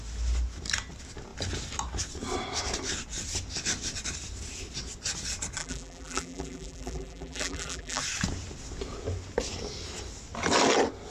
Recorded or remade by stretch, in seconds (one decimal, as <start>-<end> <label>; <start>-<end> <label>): 0.0-5.6 recorded; 5.6-8.0 remade; 8.0-11.1 recorded